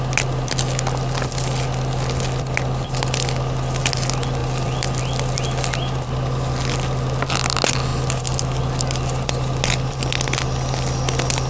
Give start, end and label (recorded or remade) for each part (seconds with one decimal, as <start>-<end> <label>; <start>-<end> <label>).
0.0-4.4 recorded; 4.4-5.0 remade; 5.0-11.5 recorded